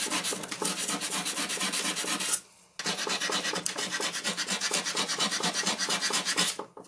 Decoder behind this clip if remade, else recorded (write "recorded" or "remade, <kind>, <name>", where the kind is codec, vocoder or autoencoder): recorded